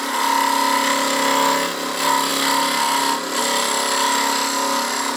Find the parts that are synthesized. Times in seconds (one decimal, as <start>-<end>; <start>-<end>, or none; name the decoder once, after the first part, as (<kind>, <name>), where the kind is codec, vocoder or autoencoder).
none